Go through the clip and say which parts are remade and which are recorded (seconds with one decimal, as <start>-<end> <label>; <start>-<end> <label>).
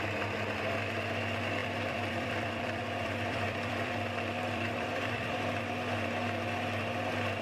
0.0-1.6 recorded; 1.6-5.6 remade; 5.6-7.4 recorded